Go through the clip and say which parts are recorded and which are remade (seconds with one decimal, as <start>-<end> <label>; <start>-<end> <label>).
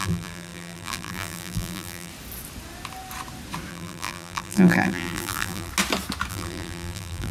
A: 0.0-2.1 remade; 2.1-3.7 recorded; 3.7-5.7 remade; 5.7-6.3 recorded; 6.3-7.3 remade